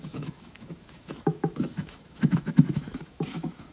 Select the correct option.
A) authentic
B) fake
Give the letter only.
B